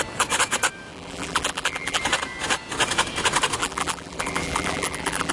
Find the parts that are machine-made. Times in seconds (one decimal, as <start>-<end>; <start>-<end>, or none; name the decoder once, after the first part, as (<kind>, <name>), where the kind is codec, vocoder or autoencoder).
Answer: 0.9-2.0 (vocoder, BigVGAN v2); 3.6-5.3